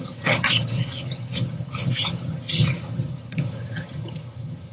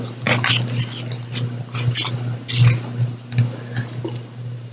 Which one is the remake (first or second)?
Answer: first